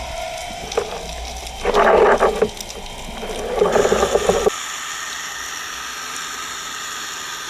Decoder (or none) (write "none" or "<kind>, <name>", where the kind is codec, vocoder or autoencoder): none